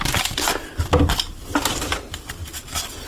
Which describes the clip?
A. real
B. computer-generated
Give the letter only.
B